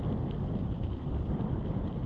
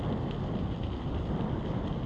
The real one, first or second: second